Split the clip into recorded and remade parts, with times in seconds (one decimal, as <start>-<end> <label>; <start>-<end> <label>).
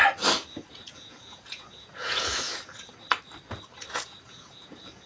0.0-0.4 recorded; 0.4-2.9 remade; 2.9-3.9 recorded; 3.9-5.1 remade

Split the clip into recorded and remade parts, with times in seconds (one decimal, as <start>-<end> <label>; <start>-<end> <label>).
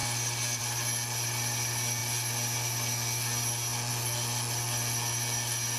0.0-5.8 recorded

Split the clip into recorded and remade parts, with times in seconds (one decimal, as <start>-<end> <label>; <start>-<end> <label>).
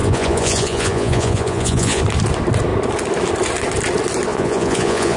0.0-2.0 remade; 2.0-4.3 recorded; 4.3-5.2 remade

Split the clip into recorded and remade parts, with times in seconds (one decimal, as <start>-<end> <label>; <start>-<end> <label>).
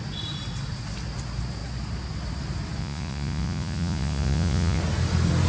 0.0-2.8 recorded; 2.8-4.8 remade; 4.8-5.5 recorded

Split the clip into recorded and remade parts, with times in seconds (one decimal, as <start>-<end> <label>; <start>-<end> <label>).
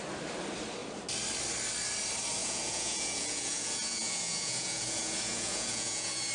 0.0-2.4 recorded; 2.4-6.3 remade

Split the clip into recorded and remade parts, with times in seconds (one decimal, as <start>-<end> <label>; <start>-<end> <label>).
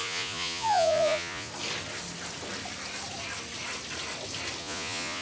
0.0-1.5 remade; 1.5-4.6 recorded; 4.6-5.2 remade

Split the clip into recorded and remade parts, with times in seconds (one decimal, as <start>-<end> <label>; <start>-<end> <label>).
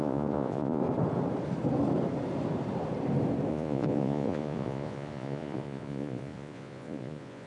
0.0-0.8 remade; 0.8-3.5 recorded; 3.5-7.5 remade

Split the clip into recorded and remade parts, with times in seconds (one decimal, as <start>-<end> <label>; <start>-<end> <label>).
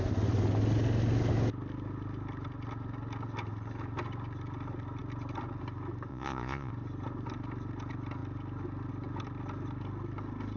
0.0-6.1 recorded; 6.1-6.7 remade; 6.7-10.6 recorded